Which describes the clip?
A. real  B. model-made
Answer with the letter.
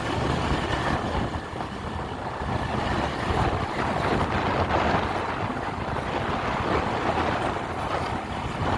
A